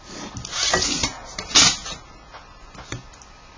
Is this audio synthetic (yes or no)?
no